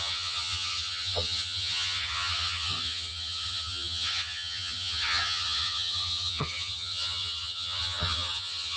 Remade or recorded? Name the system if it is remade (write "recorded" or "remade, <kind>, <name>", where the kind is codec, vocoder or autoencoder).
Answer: remade, vocoder, HiFi-GAN